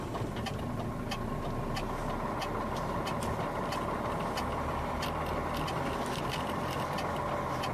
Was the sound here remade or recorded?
recorded